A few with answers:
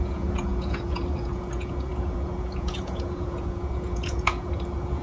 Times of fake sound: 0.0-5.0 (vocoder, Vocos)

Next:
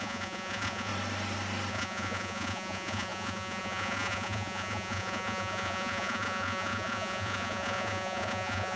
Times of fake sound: 0.0-0.9 (vocoder, Vocos); 1.7-8.8

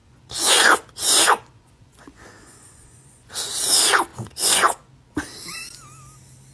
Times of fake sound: 0.0-3.3 (vocoder, Vocos); 4.1-4.9

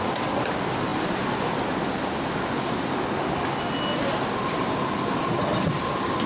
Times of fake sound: none

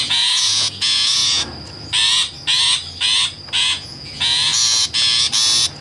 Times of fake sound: 0.0-1.2 (vocoder, Vocos); 3.6-4.5